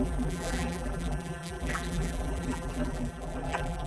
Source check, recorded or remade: remade